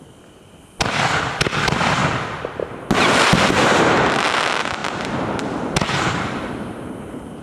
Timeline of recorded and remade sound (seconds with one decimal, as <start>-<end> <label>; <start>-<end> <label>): 0.0-7.4 recorded